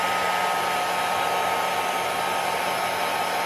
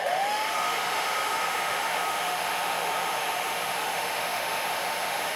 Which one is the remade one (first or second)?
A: second